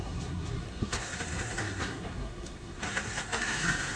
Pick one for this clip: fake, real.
fake